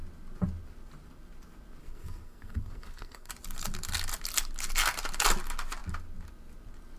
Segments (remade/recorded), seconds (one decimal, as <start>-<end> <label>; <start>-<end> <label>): 0.0-1.8 recorded; 1.8-3.3 remade; 3.3-7.0 recorded